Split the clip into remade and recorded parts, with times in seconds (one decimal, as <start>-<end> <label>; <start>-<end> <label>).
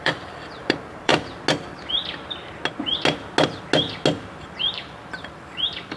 0.0-1.1 remade; 1.1-4.7 recorded; 4.7-6.0 remade